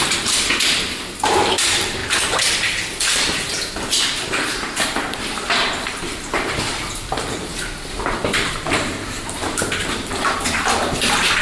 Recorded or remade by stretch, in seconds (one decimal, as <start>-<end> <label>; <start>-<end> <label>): 0.0-7.5 remade; 7.5-8.5 recorded; 8.5-11.4 remade